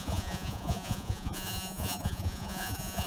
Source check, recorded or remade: remade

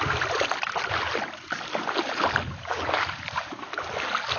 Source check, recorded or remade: recorded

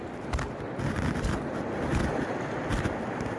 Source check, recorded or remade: recorded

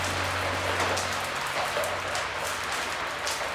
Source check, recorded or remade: recorded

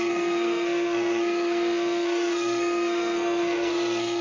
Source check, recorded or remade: remade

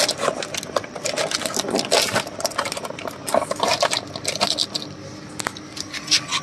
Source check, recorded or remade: recorded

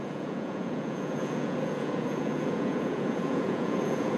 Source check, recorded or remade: remade